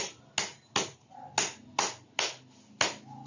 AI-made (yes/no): no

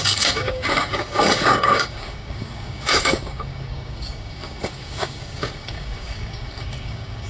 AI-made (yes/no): yes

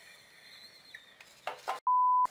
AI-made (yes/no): no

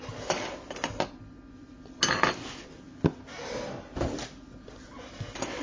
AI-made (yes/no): no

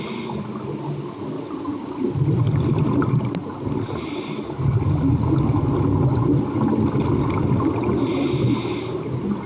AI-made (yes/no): no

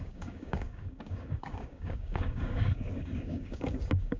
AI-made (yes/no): yes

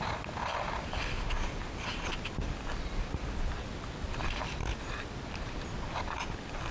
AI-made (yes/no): no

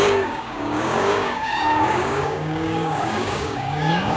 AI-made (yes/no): yes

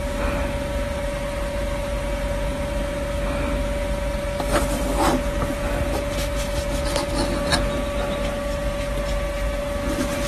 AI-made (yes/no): no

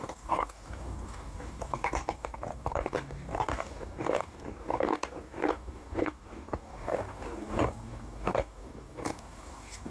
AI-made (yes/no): yes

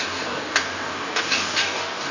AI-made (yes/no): yes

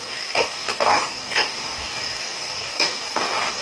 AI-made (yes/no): yes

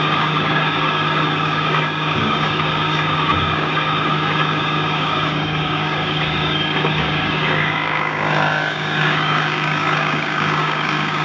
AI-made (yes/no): yes